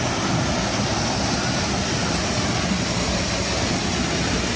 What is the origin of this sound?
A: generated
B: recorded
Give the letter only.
B